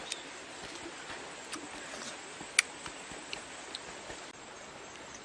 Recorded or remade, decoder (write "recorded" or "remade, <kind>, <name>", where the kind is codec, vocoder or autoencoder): recorded